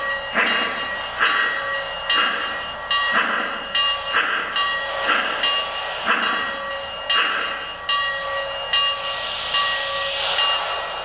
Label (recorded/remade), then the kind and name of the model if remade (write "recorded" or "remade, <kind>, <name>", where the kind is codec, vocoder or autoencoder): recorded